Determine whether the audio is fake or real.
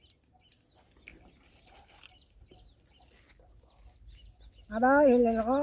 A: real